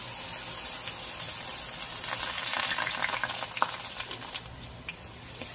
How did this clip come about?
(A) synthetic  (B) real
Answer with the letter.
B